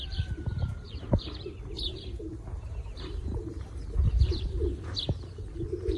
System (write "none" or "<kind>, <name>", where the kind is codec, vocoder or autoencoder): vocoder, BigVGAN v2